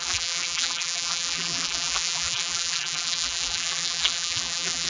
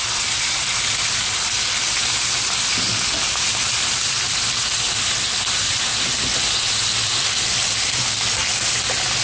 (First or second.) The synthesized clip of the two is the first